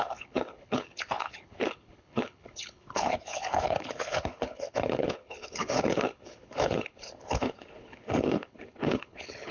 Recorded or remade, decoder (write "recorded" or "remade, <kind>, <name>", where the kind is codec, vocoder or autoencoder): remade, codec, HILCodec